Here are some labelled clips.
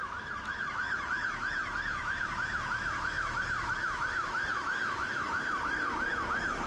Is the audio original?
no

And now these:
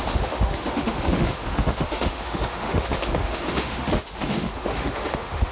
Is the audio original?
no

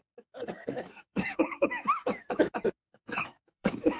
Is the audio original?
no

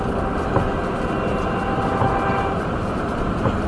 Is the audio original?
yes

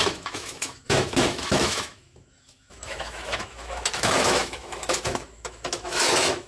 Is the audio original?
no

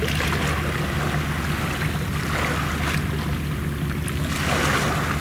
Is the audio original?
yes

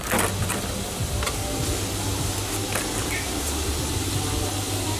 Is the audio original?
yes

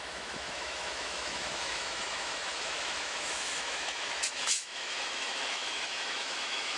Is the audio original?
no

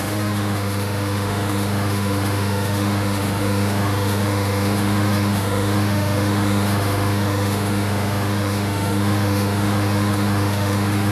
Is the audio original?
no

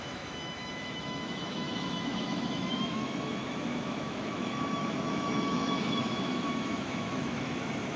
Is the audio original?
no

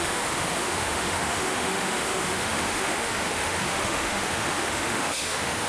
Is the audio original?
no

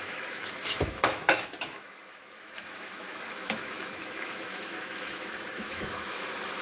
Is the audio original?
no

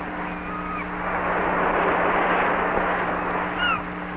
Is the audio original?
yes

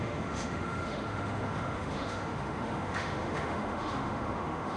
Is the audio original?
no